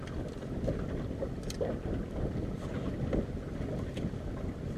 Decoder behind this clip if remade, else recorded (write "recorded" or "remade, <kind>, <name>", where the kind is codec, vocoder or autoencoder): recorded